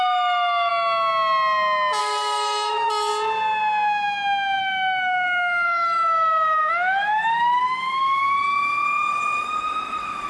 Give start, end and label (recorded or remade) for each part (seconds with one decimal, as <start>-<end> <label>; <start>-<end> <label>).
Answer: 0.0-0.7 remade; 0.7-2.0 recorded; 2.0-3.1 remade; 3.1-4.6 recorded; 4.6-10.3 remade